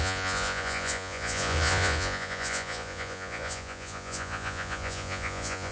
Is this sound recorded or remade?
remade